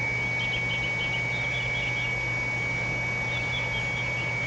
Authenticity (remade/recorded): recorded